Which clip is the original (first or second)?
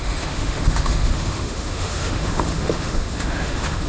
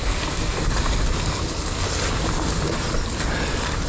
second